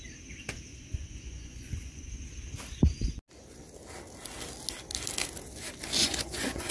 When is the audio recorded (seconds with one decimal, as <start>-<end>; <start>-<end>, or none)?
0.0-0.7; 2.1-6.0